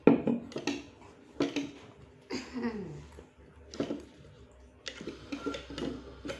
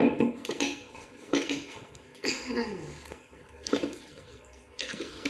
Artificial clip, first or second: second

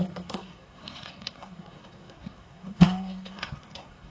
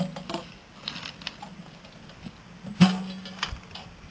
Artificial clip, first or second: first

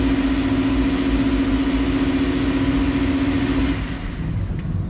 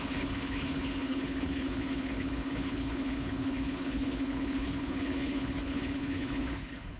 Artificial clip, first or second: second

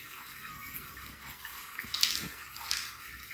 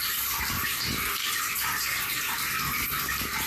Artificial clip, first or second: first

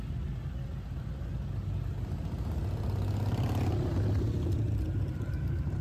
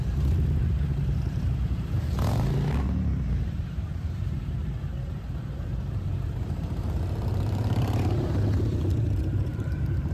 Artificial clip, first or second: second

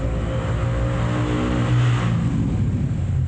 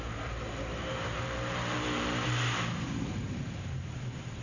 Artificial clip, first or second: second